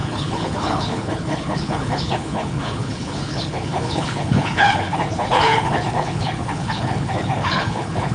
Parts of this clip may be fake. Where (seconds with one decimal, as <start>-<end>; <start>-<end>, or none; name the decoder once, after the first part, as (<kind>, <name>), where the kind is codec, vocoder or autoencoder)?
0.0-8.1 (codec, HILCodec)